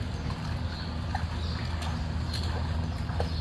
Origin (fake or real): real